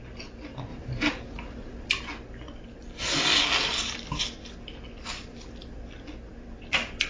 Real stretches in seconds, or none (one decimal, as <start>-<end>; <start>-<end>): 0.0-0.7; 1.9-7.1